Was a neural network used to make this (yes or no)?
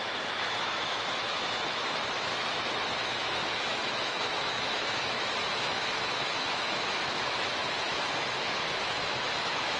yes